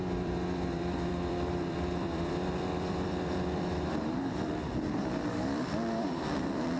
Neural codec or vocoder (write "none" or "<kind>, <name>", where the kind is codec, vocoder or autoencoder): vocoder, BigVGAN v2